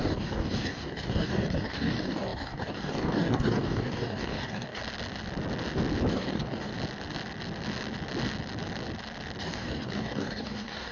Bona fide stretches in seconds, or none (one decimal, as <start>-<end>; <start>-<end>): 4.8-6.1; 6.7-9.4